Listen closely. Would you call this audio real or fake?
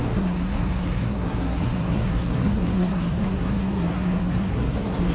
fake